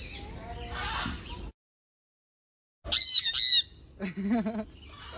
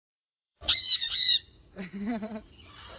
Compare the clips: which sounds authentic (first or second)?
first